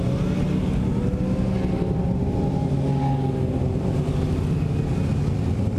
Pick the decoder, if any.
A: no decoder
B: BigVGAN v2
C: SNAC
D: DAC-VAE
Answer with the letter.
A